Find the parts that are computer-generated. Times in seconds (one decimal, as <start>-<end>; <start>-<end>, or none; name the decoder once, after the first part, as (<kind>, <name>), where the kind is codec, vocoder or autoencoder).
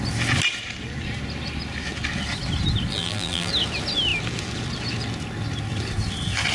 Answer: 2.9-3.5 (vocoder, BigVGAN v2)